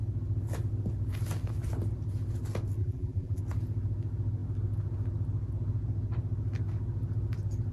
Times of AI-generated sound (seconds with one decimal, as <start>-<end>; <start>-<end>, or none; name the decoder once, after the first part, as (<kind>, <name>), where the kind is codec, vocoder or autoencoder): 2.8-3.4 (vocoder, BigVGAN v2)